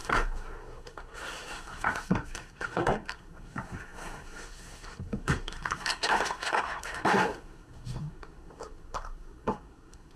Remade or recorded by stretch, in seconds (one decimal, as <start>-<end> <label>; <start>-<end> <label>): 0.0-10.2 remade